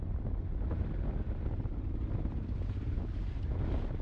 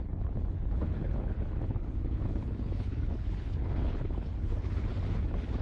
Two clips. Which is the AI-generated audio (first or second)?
second